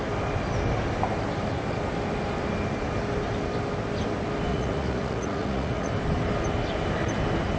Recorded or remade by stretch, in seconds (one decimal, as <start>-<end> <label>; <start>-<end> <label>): 0.0-4.5 recorded; 4.5-5.9 remade; 5.9-7.6 recorded